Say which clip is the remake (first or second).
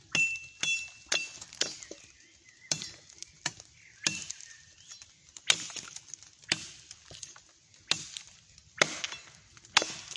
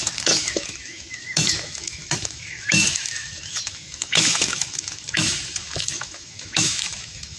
second